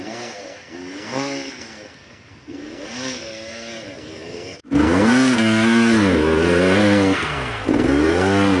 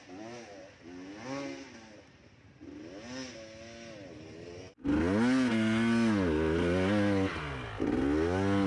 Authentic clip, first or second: second